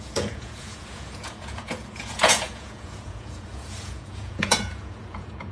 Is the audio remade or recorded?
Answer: remade